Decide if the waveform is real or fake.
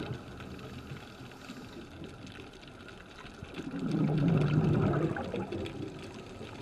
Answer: real